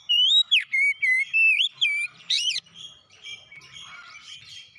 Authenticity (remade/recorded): remade